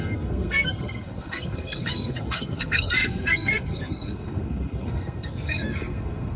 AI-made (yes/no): yes